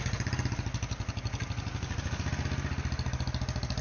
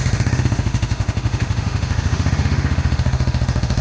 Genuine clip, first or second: first